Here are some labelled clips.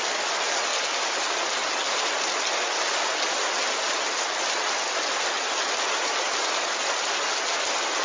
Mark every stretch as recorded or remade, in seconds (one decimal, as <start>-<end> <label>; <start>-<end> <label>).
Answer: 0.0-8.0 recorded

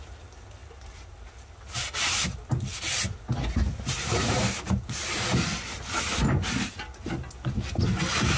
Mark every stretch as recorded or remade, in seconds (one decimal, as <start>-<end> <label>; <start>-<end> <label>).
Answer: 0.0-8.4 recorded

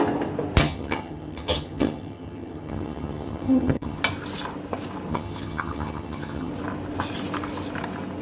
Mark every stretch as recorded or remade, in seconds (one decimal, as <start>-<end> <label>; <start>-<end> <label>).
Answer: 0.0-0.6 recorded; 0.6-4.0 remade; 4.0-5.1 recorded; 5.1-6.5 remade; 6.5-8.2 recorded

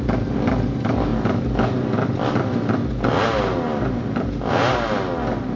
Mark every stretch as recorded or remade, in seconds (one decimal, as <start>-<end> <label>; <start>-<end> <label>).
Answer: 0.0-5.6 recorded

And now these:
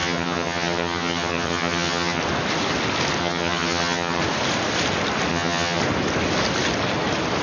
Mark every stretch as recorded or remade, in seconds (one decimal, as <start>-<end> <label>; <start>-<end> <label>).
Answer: 0.0-2.2 remade; 2.2-3.2 recorded; 3.2-4.2 remade; 4.2-5.3 recorded; 5.3-5.8 remade; 5.8-7.4 recorded

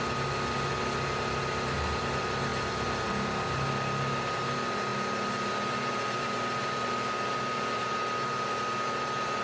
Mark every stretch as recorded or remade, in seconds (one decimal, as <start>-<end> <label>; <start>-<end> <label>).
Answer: 0.0-9.4 recorded